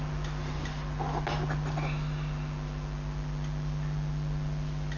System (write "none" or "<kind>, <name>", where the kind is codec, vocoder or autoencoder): none